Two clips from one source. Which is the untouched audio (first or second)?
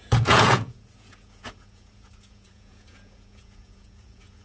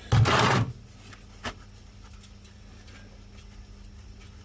second